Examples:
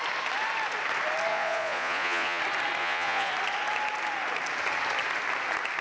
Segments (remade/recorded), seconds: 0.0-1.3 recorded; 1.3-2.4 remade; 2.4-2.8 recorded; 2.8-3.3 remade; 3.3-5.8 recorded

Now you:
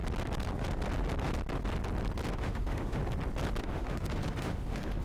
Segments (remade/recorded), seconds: 0.0-2.3 recorded; 2.3-3.0 remade; 3.0-3.6 recorded; 3.6-5.0 remade